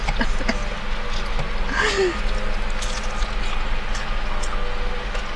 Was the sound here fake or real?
real